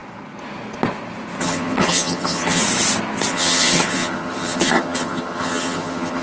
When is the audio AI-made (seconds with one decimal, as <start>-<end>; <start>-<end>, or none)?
1.4-2.6; 3.3-6.2